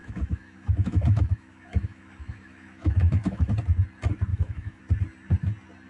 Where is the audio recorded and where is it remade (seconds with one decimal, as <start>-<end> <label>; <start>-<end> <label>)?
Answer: 0.0-3.5 remade; 3.5-4.3 recorded; 4.3-4.8 remade; 4.8-5.9 recorded